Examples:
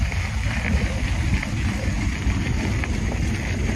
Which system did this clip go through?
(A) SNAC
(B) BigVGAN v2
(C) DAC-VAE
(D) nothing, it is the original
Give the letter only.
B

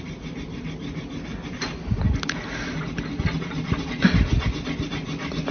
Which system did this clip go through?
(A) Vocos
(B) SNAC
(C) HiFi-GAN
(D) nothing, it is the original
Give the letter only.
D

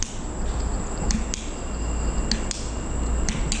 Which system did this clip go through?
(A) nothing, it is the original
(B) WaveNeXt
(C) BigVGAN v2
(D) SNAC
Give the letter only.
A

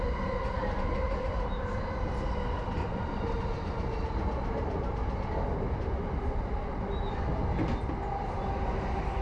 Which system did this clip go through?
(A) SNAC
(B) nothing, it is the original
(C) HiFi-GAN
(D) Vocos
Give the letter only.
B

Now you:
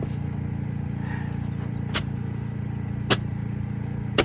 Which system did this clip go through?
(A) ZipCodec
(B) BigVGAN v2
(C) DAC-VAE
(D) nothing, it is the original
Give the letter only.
D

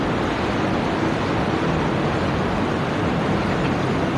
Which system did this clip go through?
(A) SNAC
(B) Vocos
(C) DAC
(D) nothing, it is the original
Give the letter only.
D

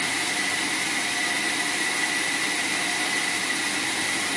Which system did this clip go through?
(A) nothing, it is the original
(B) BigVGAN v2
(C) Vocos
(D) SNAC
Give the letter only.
A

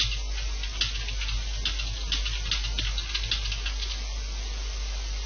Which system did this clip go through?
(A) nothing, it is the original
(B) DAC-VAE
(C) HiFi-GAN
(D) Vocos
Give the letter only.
A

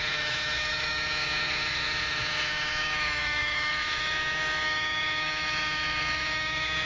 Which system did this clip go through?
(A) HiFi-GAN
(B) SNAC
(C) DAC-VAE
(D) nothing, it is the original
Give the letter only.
C